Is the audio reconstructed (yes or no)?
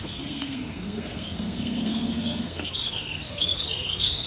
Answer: yes